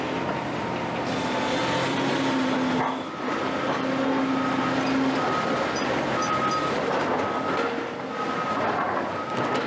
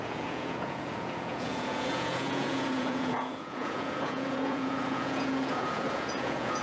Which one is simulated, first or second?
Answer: second